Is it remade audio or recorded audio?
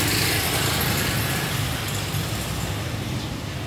recorded